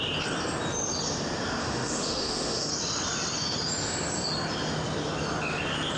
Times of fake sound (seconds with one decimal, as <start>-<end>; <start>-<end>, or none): 1.6-2.7

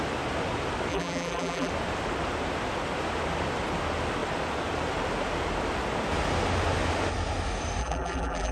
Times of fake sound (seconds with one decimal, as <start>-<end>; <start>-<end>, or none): 0.9-1.7; 7.8-8.5

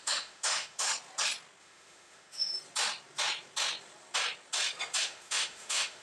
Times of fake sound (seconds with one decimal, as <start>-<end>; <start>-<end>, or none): 0.0-0.9; 1.6-2.5; 5.0-6.0

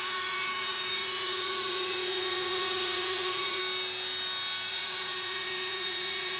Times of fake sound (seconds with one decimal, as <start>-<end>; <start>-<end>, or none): 0.0-3.6; 4.7-6.4

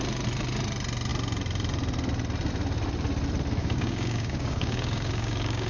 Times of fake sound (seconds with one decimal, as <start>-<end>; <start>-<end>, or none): 3.6-5.7

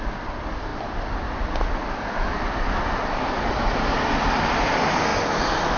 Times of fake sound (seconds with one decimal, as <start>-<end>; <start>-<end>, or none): none

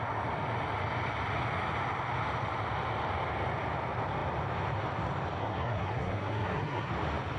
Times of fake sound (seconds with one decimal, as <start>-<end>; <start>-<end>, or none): 5.4-6.9

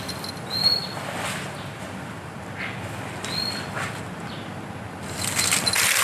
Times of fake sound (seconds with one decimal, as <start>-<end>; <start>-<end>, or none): none